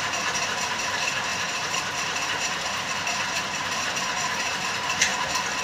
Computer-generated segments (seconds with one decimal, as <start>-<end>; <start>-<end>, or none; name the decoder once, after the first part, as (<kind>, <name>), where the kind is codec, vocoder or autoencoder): 0.0-5.1 (vocoder, BigVGAN v2)